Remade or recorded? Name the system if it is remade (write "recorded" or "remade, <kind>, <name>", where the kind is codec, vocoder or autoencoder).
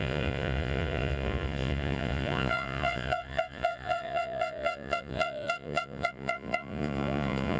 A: remade, vocoder, Vocos